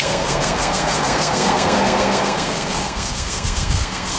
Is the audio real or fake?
fake